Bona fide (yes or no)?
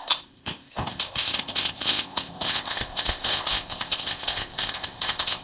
no